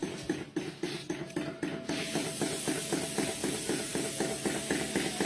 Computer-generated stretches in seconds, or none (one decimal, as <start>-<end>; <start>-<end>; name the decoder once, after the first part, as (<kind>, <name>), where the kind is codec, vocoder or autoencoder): none